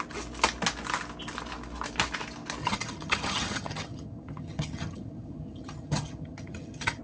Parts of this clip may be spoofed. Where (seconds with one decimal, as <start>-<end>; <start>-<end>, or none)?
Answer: 2.6-7.0